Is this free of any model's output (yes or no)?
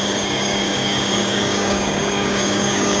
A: no